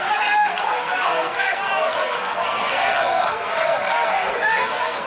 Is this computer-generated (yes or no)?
yes